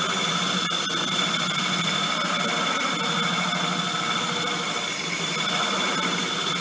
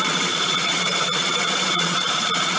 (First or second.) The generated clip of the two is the second